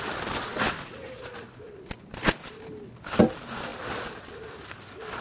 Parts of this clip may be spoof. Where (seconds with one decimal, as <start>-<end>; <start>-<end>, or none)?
none